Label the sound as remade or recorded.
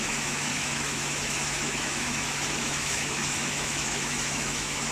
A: remade